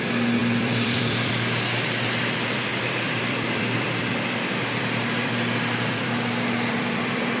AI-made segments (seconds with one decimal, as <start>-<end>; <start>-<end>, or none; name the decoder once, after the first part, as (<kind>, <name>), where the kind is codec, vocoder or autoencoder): 0.4-1.3 (vocoder, BigVGAN v2); 2.7-7.4